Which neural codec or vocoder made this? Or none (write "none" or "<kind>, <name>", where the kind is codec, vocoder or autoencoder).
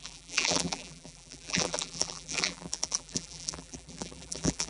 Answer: vocoder, BigVGAN v2